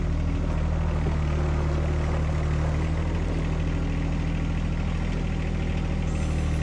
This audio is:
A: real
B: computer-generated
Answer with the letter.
A